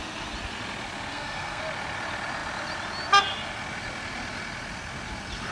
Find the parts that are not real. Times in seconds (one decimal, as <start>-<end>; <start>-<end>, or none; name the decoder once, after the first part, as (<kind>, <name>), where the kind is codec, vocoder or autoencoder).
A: 1.1-1.6 (codec, SNAC)